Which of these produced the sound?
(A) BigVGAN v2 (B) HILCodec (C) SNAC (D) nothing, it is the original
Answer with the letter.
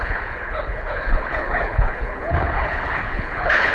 B